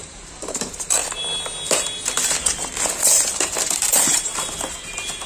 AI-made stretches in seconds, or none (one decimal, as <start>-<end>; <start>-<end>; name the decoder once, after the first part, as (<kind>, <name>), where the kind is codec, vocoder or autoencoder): 0.0-1.0 (vocoder, BigVGAN v2); 3.4-4.3